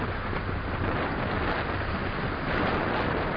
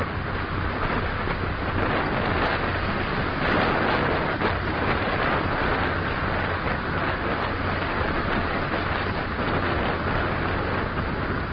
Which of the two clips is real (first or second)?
second